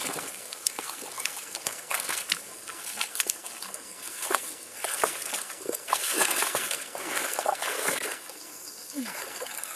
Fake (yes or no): yes